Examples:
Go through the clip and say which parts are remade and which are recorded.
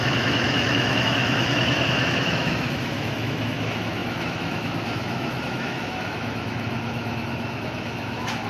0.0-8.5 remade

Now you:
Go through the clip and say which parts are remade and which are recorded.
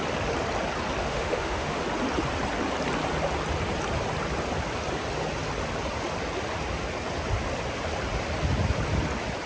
0.0-1.0 recorded; 1.0-1.8 remade; 1.8-9.5 recorded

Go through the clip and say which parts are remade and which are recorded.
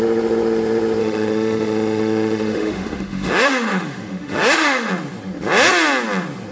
0.0-1.0 recorded; 1.0-4.9 remade; 4.9-6.5 recorded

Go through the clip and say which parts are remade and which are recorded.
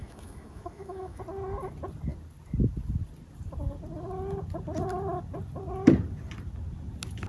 0.0-1.2 remade; 1.2-7.3 recorded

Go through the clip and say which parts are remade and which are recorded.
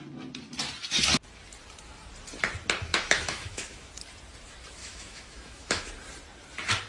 0.0-2.9 recorded; 2.9-3.9 remade; 3.9-4.8 recorded; 4.8-5.9 remade; 5.9-6.9 recorded